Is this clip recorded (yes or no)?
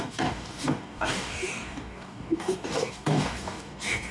no